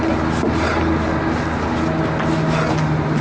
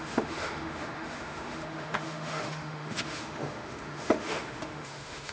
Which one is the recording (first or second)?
first